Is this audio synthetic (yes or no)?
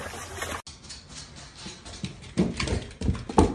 no